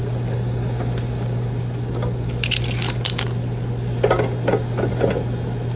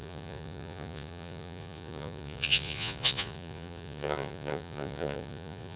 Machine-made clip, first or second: second